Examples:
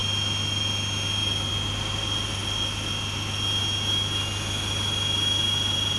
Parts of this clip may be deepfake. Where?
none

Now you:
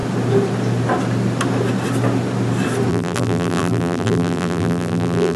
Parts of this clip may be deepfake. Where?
2.9-5.4 (vocoder, BigVGAN v2)

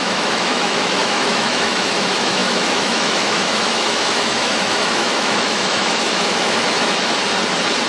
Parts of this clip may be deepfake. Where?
0.0-7.2 (autoencoder, DAC-VAE)

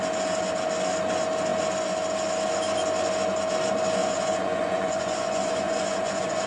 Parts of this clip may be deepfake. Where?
4.0-6.5 (vocoder, Vocos)

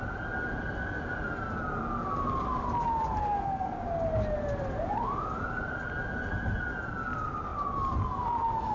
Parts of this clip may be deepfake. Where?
3.2-3.8 (codec, SNAC)

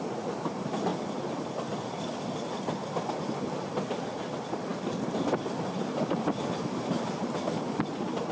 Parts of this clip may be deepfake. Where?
none

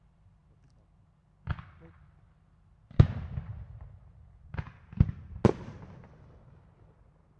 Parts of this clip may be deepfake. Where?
none

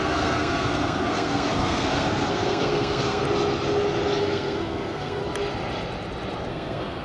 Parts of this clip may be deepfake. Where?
0.0-3.2 (codec, SNAC); 4.2-5.2; 6.5-7.0